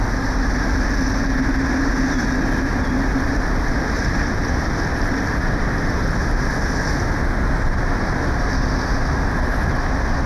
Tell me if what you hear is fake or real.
real